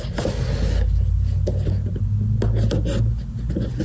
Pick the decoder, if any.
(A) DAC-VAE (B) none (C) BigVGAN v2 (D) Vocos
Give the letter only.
B